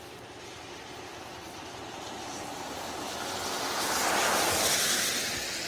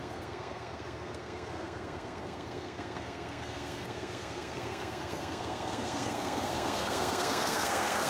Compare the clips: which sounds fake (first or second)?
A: second